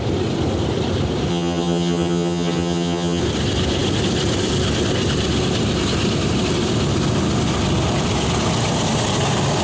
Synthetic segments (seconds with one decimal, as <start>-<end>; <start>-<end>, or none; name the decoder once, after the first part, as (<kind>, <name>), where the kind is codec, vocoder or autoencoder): 1.3-3.2 (vocoder, HiFi-GAN)